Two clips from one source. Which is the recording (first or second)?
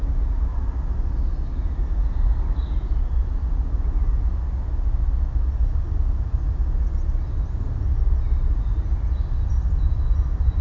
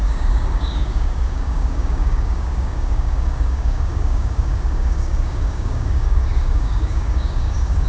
first